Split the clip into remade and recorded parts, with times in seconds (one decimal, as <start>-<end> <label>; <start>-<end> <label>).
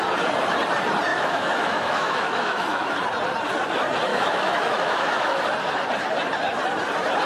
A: 0.0-1.1 recorded; 1.1-2.9 remade; 2.9-4.1 recorded; 4.1-5.4 remade; 5.4-7.3 recorded